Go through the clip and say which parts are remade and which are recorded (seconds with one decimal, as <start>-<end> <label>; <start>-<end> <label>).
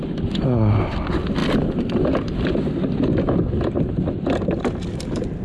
0.0-5.4 recorded